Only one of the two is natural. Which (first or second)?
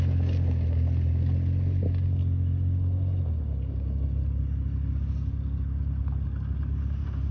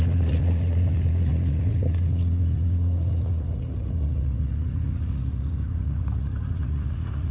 first